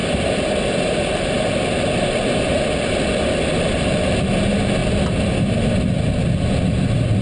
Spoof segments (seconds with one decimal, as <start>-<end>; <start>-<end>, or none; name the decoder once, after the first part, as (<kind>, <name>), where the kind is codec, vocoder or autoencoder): 0.0-4.3 (vocoder, BigVGAN v2)